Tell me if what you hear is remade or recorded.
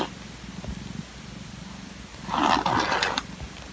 recorded